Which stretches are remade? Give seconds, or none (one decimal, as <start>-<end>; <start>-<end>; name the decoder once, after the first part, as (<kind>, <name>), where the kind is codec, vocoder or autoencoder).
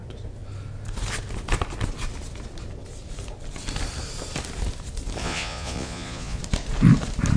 5.2-6.4 (vocoder, Vocos)